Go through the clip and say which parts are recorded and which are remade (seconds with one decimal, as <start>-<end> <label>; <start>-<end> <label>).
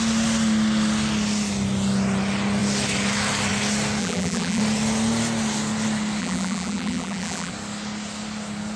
0.0-4.0 recorded; 4.0-4.6 remade; 4.6-6.2 recorded; 6.2-7.5 remade; 7.5-8.8 recorded